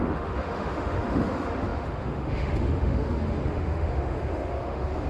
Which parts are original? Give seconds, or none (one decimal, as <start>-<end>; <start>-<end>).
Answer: none

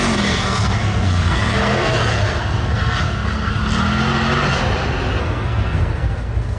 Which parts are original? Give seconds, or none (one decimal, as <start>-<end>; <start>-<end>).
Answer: 3.6-5.2

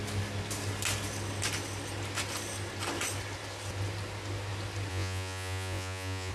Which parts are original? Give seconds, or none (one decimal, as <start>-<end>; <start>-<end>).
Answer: 0.0-4.9

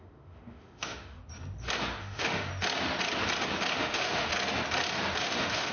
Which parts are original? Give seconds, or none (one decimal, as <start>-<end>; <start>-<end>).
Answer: 1.2-2.0; 2.5-3.8; 4.3-5.2

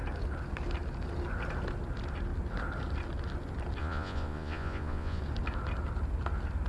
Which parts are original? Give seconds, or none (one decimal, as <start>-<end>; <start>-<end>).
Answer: 0.0-3.8; 5.2-6.7

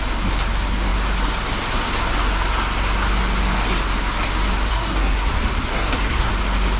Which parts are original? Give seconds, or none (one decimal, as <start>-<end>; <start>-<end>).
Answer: 0.0-4.7; 5.3-5.7; 6.3-6.8

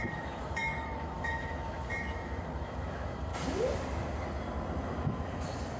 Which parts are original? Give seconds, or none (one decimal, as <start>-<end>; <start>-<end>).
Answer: 3.3-5.8

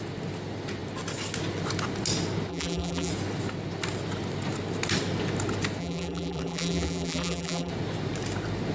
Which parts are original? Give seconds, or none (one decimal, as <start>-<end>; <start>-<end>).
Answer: 0.0-2.5; 3.1-5.8; 7.7-8.7